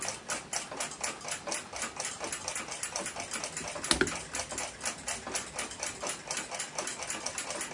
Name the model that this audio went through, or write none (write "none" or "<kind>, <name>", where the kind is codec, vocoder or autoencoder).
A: none